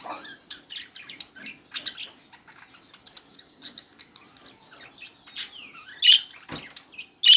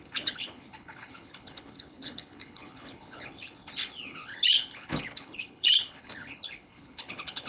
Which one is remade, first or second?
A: second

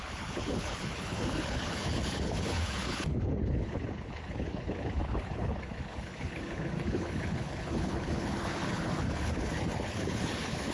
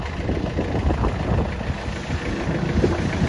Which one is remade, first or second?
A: first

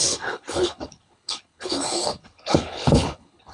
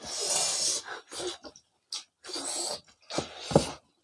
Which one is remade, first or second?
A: first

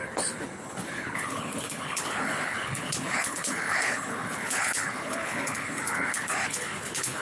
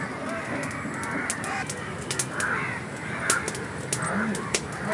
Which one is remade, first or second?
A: first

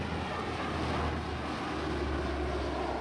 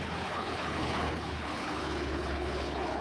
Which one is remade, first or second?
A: second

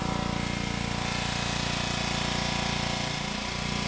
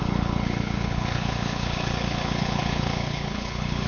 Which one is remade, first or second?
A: second